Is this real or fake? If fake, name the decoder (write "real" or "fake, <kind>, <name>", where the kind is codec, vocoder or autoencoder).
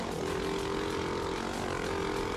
real